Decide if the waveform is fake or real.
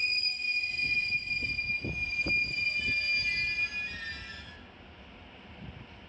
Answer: real